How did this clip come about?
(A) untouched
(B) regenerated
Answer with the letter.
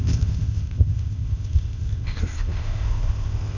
B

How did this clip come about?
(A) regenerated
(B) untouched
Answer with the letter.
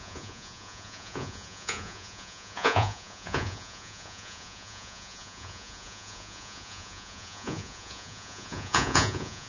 A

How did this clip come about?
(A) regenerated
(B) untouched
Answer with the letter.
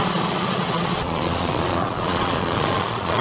A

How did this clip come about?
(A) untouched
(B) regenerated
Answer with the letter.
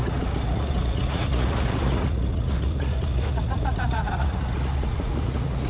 B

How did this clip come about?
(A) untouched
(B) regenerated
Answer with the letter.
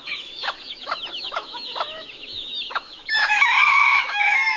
B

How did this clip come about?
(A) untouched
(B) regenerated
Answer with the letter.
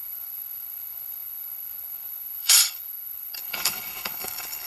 B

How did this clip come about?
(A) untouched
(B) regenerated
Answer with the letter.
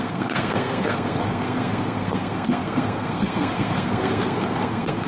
B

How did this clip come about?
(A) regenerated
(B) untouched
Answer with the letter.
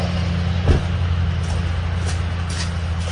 B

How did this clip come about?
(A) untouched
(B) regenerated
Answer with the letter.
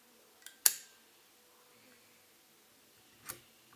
A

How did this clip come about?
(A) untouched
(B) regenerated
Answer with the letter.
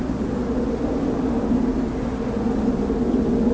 A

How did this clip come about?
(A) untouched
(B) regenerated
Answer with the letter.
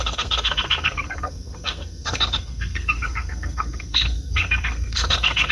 B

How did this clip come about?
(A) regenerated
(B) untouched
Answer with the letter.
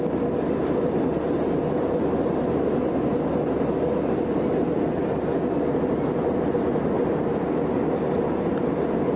B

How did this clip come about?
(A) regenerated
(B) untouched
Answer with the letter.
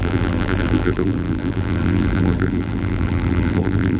A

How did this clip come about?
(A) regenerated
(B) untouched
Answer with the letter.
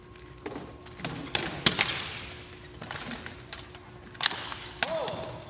B